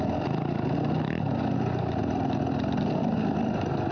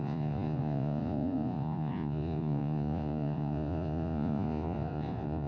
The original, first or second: first